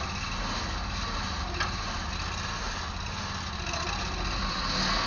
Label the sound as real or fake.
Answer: real